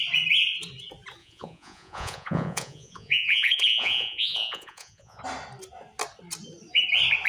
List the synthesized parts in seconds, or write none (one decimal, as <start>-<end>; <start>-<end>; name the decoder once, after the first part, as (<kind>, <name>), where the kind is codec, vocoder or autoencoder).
1.2-5.2 (vocoder, Vocos)